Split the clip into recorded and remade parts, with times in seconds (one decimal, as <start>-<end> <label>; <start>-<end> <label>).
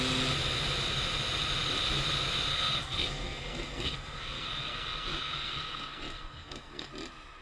0.0-2.5 recorded; 2.5-6.9 remade; 6.9-7.4 recorded